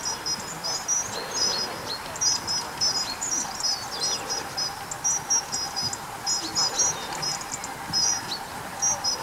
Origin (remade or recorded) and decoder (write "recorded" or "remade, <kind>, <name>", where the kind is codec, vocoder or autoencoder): recorded